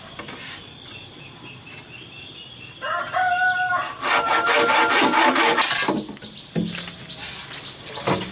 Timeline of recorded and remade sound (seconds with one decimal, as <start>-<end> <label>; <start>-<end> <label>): 0.0-8.3 recorded